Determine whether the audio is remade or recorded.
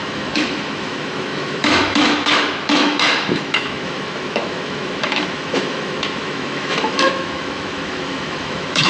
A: remade